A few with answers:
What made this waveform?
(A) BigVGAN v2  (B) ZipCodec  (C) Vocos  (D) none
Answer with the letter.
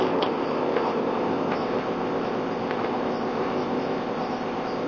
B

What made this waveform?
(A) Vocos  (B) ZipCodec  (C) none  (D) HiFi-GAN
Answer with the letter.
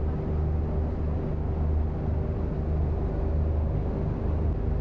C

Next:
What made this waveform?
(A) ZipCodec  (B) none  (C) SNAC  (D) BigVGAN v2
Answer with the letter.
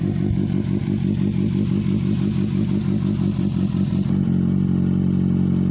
B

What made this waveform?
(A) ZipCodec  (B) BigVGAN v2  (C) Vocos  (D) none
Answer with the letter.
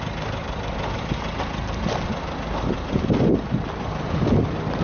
D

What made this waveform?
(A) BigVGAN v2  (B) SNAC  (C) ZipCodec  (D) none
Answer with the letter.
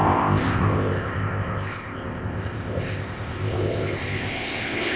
C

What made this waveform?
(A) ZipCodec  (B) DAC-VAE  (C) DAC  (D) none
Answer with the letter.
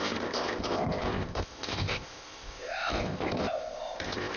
A